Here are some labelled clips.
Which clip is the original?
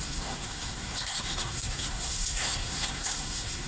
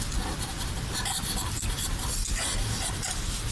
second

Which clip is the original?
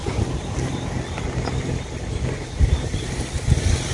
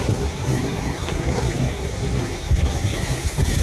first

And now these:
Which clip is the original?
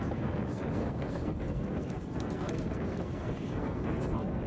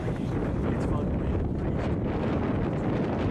second